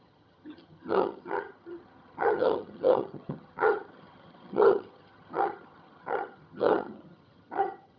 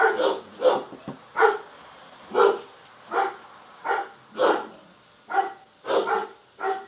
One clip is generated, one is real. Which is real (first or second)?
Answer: second